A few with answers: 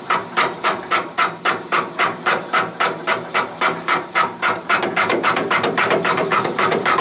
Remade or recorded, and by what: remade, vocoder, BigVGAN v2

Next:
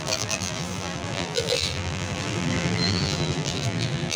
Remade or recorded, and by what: remade, vocoder, BigVGAN v2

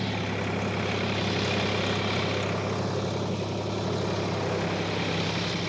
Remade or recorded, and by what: recorded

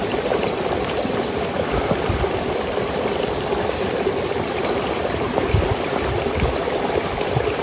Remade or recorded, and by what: remade, vocoder, BigVGAN v2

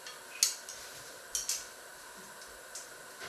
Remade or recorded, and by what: recorded